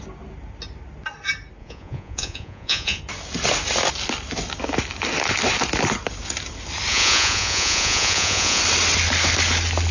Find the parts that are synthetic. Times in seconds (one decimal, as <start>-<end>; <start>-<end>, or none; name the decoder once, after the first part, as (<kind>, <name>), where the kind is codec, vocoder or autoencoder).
1.6-3.0 (vocoder, Vocos); 6.9-8.6